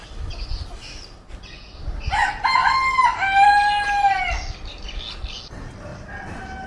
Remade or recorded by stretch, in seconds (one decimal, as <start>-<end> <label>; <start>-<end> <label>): 0.0-6.7 recorded

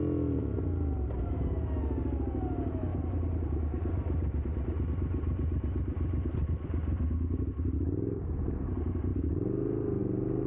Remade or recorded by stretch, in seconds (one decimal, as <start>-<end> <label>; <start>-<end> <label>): 0.0-2.9 recorded; 2.9-4.9 remade; 4.9-10.5 recorded

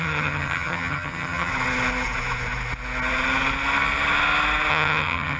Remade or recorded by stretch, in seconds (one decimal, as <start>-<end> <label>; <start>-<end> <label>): 0.0-1.5 remade; 1.5-4.7 recorded; 4.7-5.4 remade

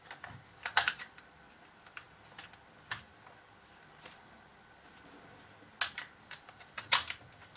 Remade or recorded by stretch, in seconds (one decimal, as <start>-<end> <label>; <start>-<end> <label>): 0.0-4.5 remade; 4.5-6.2 recorded; 6.2-7.6 remade

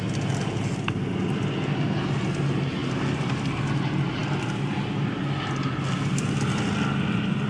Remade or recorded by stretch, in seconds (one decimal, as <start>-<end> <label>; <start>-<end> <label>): 0.0-7.5 recorded

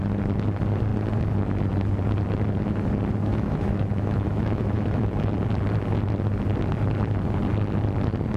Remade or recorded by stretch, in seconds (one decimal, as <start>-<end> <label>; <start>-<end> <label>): 0.0-3.3 recorded; 3.3-5.3 remade; 5.3-8.4 recorded

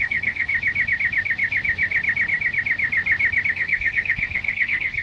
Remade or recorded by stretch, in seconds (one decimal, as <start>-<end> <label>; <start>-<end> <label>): 0.0-0.5 remade; 0.5-3.5 recorded; 3.5-5.0 remade